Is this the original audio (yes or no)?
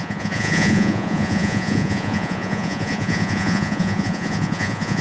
no